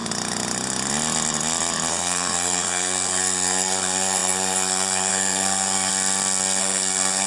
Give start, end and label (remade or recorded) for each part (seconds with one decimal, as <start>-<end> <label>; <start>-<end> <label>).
0.0-1.9 recorded; 1.9-5.9 remade; 5.9-6.6 recorded; 6.6-7.3 remade